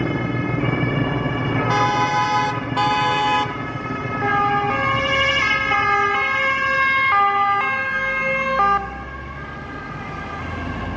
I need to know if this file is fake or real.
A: real